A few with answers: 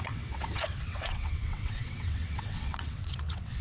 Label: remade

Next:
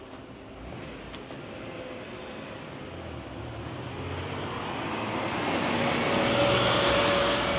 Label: recorded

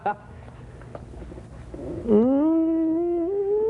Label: recorded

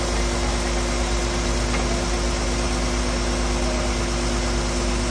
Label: recorded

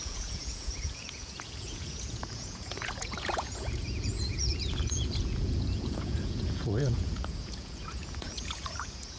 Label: remade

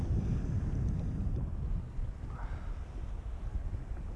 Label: recorded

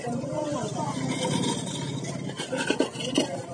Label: recorded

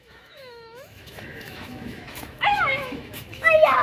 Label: remade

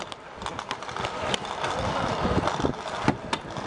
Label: recorded